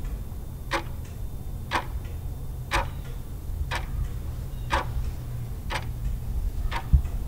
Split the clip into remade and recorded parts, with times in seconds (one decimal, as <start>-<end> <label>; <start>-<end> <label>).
0.0-7.3 recorded